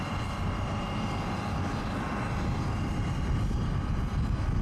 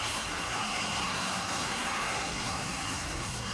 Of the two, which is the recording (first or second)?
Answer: first